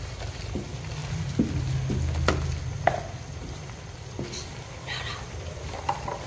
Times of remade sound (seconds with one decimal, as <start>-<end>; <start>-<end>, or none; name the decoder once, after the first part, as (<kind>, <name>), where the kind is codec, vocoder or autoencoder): 0.0-1.0 (vocoder, BigVGAN v2); 2.6-6.3